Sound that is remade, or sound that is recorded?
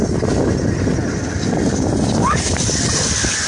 recorded